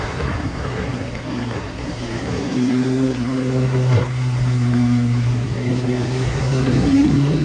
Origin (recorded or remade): remade